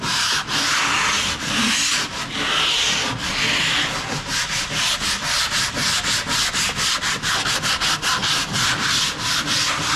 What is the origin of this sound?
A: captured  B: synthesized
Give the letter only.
A